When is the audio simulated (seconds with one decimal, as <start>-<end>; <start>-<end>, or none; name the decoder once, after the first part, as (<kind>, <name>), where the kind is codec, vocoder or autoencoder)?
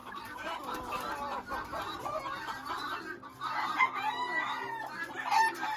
0.0-0.5 (vocoder, BigVGAN v2)